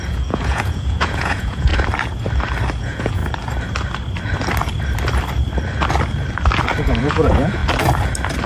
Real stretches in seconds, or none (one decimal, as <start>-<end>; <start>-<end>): 1.7-2.8; 3.2-7.0; 7.6-8.5